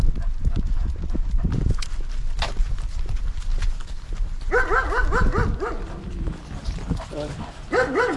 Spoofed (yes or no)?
no